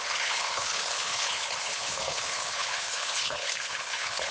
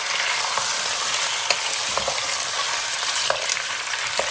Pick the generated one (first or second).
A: first